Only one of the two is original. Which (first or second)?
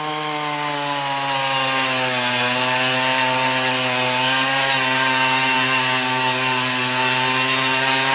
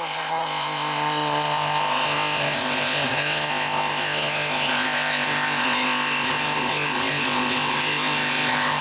first